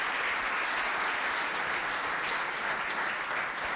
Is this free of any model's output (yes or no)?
yes